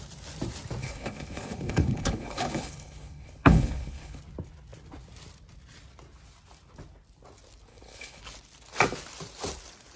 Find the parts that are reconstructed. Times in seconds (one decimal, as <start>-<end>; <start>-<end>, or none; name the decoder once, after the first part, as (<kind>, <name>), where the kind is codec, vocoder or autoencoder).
0.8-4.2 (codec, HILCodec); 7.7-8.2